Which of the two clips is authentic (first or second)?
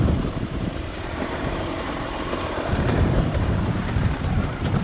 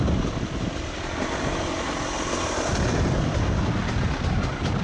second